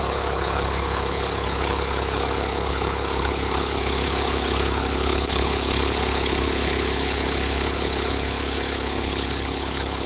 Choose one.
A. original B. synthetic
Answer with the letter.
B